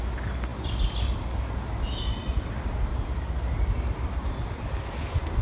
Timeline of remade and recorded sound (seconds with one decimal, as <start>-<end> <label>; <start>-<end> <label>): 0.0-5.4 recorded